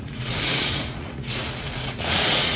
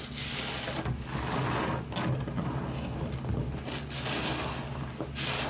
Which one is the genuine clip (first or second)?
second